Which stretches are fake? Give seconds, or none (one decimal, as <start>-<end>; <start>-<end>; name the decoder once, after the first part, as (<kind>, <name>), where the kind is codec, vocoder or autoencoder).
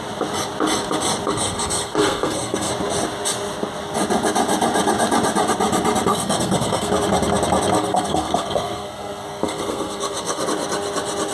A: 1.3-2.7 (codec, SNAC); 6.1-6.9; 7.8-10.4